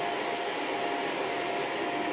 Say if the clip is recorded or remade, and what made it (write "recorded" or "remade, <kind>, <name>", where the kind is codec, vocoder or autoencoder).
recorded